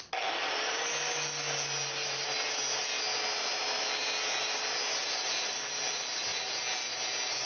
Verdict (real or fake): real